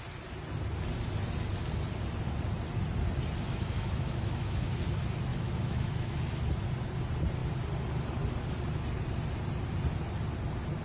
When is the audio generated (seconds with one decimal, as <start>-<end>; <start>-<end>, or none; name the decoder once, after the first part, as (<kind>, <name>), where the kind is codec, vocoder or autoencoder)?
3.5-4.7 (autoencoder, DAC-VAE); 5.3-6.2

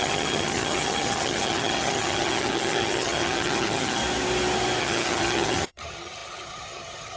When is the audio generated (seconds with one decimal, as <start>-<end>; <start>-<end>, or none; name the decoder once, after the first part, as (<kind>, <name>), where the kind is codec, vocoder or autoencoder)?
0.0-4.0 (vocoder, HiFi-GAN); 4.8-7.2

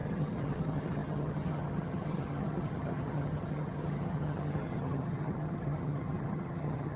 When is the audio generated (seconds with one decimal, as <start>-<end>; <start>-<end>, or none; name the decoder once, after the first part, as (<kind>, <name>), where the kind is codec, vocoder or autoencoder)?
0.0-7.0 (vocoder, HiFi-GAN)

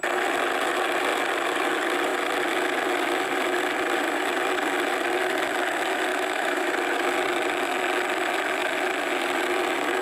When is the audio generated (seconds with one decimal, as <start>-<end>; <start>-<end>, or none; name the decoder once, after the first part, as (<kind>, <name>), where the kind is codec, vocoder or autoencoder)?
6.1-6.7 (autoencoder, DAC-VAE)

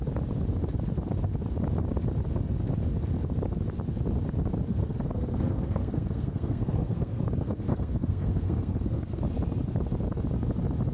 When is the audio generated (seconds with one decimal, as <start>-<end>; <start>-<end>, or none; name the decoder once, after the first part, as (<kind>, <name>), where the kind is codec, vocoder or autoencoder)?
4.7-9.2 (codec, SNAC)

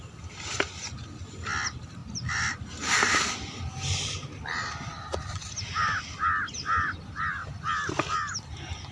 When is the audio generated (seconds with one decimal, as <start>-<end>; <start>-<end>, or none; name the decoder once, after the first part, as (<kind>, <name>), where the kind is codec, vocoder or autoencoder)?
0.0-8.9 (vocoder, BigVGAN v2)

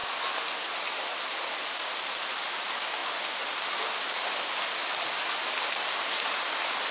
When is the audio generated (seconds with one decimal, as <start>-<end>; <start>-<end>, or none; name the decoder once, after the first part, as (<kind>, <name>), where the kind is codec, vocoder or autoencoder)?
0.0-0.7 (vocoder, BigVGAN v2)

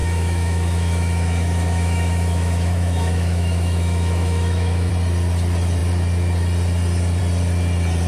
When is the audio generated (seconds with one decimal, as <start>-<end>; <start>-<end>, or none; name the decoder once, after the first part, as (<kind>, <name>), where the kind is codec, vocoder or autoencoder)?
0.0-4.9 (autoencoder, DAC-VAE)